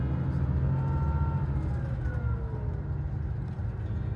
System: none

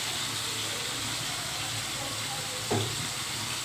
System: vocoder, BigVGAN v2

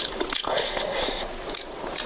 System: none